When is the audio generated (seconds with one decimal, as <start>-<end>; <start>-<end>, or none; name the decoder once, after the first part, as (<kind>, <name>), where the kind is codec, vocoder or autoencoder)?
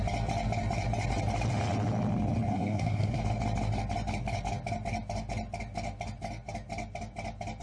2.5-3.2 (codec, SNAC)